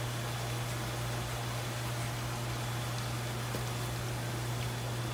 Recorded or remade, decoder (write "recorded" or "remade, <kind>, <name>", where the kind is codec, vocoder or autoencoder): recorded